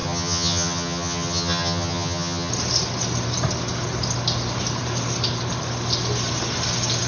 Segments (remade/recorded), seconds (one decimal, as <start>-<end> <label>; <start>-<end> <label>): 0.0-2.5 remade; 2.5-7.1 recorded

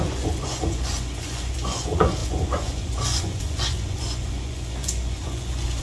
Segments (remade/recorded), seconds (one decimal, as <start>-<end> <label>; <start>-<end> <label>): 0.0-5.8 remade

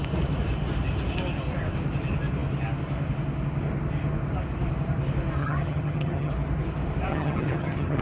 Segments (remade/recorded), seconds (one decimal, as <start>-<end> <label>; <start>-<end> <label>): 0.0-5.4 recorded; 5.4-6.3 remade; 6.3-7.1 recorded; 7.1-8.0 remade

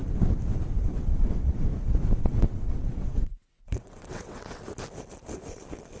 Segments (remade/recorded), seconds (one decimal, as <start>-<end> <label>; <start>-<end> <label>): 0.0-0.8 recorded; 0.8-1.7 remade; 1.7-2.2 recorded; 2.2-4.6 remade; 4.6-6.0 recorded

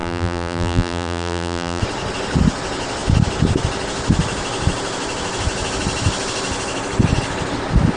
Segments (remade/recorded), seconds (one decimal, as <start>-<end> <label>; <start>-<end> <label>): 0.0-1.8 remade; 1.8-8.0 recorded

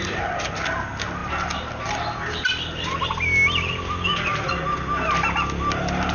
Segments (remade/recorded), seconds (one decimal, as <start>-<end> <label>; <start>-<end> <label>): 0.0-6.1 recorded

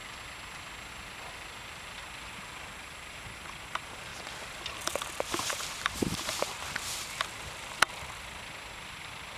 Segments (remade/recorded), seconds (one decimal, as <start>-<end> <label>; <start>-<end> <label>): 0.0-0.9 recorded; 0.9-4.1 remade; 4.1-4.7 recorded; 4.7-9.4 remade